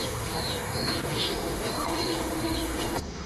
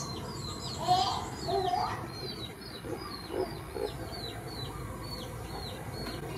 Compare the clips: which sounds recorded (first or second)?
second